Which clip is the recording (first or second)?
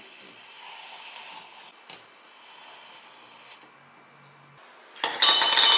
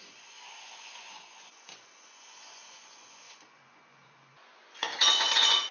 first